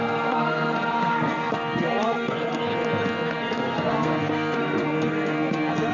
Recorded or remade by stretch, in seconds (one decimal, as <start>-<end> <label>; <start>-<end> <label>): 0.0-2.7 remade; 2.7-3.3 recorded; 3.3-5.9 remade